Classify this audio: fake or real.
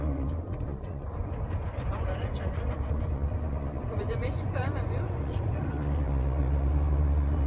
fake